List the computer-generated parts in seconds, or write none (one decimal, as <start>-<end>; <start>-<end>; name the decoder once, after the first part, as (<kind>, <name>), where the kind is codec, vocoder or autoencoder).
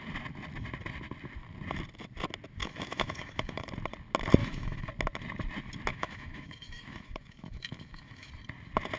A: 2.6-3.7 (autoencoder, DAC-VAE); 4.4-4.9; 5.9-8.3